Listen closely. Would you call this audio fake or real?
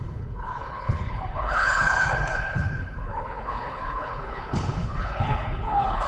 fake